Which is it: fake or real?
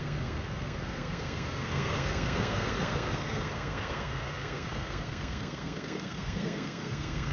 fake